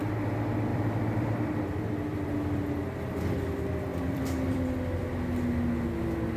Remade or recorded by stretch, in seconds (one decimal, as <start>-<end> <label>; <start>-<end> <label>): 0.0-0.7 recorded; 0.7-1.5 remade; 1.5-3.9 recorded; 3.9-4.7 remade; 4.7-6.4 recorded